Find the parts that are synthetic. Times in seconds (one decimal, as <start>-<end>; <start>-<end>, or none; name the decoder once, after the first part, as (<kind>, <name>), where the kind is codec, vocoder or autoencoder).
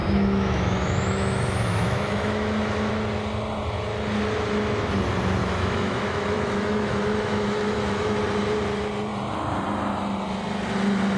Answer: 0.0-2.9 (autoencoder, DAC-VAE); 5.4-8.2